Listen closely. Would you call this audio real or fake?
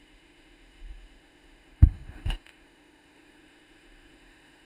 fake